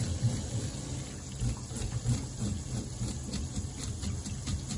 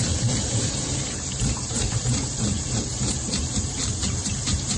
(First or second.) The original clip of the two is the first